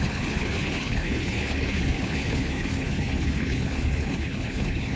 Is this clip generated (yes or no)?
yes